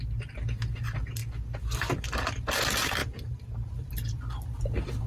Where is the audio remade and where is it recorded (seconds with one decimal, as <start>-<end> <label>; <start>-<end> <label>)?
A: 0.0-3.0 recorded; 3.0-3.9 remade; 3.9-5.1 recorded